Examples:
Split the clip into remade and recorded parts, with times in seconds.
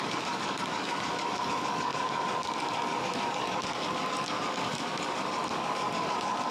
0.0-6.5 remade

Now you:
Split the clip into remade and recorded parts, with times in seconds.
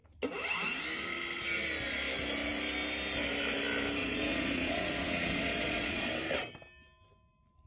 0.0-4.0 recorded; 4.0-6.1 remade; 6.1-7.7 recorded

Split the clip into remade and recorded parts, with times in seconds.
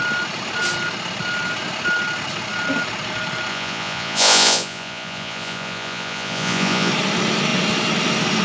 0.0-3.5 recorded; 3.5-6.9 remade; 6.9-8.4 recorded